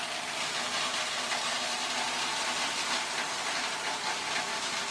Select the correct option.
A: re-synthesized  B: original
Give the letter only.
B